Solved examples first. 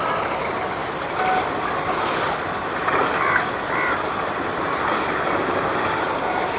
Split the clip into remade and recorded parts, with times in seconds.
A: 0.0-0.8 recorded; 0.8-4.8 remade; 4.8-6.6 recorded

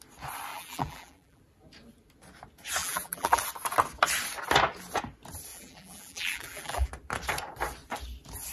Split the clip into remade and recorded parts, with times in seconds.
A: 0.0-0.5 recorded; 0.5-1.4 remade; 1.4-2.8 recorded; 2.8-3.4 remade; 3.4-5.5 recorded; 5.5-6.9 remade; 6.9-8.5 recorded